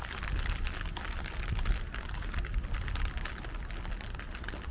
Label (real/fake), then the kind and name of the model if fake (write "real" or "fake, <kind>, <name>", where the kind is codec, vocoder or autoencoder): real